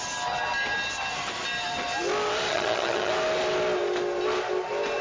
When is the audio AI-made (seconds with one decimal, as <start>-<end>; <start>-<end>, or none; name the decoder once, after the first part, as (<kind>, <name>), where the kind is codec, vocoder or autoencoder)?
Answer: 2.5-3.1 (vocoder, HiFi-GAN)